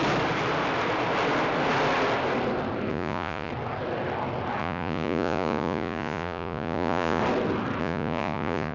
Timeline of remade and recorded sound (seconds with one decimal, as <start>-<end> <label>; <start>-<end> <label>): 0.0-2.9 recorded; 2.9-3.5 remade; 3.5-4.6 recorded; 4.6-7.2 remade; 7.2-7.8 recorded; 7.8-8.7 remade